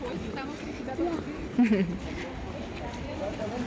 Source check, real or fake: real